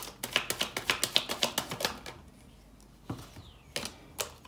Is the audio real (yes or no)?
yes